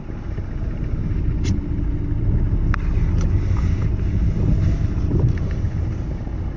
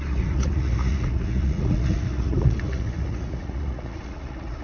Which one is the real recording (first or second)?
first